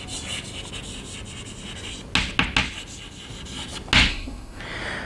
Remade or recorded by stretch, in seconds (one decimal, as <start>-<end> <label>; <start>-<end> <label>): 0.0-4.1 recorded; 4.1-4.6 remade; 4.6-5.1 recorded